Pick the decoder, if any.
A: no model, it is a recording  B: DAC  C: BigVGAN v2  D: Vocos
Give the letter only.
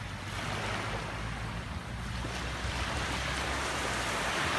A